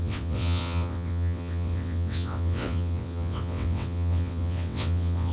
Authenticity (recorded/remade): remade